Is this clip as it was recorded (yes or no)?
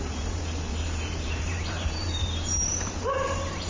no